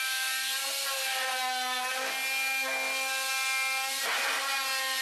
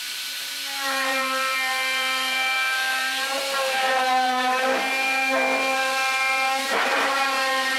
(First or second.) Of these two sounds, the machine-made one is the second